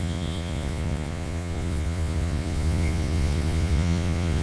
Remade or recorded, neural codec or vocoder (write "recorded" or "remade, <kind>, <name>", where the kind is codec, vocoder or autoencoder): remade, vocoder, Vocos